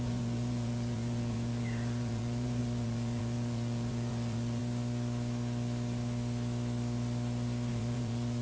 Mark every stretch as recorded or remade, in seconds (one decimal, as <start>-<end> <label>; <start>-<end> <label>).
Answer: 0.0-4.6 remade; 4.6-7.7 recorded; 7.7-8.4 remade